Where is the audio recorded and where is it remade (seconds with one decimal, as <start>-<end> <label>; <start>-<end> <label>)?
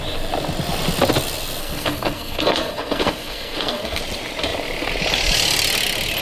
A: 0.0-1.6 recorded; 1.6-4.0 remade; 4.0-6.2 recorded